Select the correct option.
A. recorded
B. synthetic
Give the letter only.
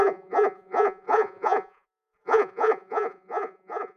B